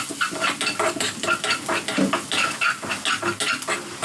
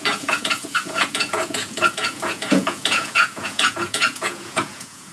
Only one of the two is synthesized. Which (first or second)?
second